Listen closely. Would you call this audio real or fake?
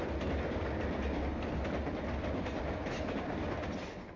real